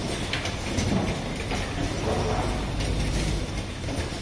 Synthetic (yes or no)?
no